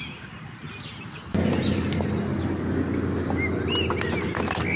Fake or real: real